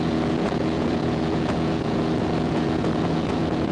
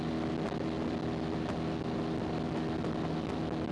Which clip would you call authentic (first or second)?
second